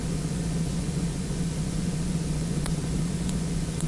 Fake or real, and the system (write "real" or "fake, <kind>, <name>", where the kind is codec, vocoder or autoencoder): fake, vocoder, Vocos